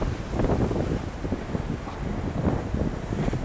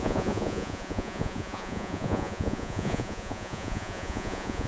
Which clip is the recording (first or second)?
first